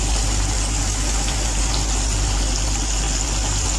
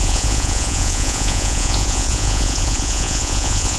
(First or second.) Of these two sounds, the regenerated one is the second